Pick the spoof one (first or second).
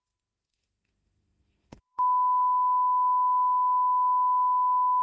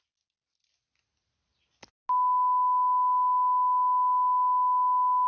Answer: first